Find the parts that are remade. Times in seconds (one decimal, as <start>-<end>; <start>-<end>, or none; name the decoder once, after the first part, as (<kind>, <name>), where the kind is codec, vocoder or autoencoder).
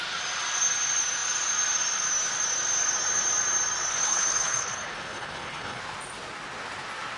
3.9-5.8 (codec, HILCodec)